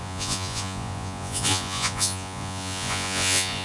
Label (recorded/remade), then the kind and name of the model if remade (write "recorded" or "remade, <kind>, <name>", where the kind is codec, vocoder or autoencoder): remade, vocoder, Vocos